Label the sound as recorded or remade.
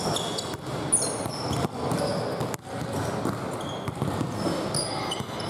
recorded